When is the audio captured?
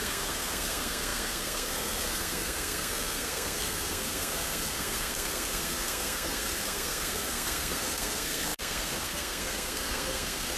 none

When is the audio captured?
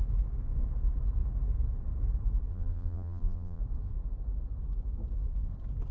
0.0-2.5; 3.6-5.9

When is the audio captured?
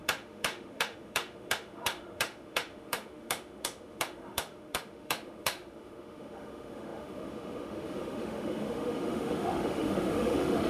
none